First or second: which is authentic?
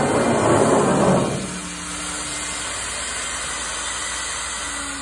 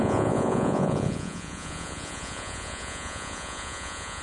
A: first